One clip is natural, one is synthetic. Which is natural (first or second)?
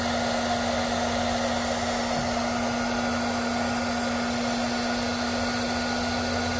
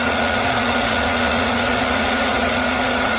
first